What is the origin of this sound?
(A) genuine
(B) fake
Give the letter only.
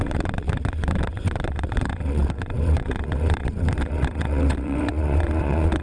B